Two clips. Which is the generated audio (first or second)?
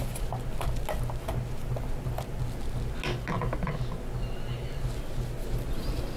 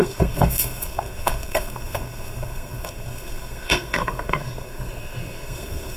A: second